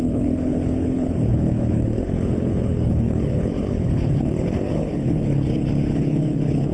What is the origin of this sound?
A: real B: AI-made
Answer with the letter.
B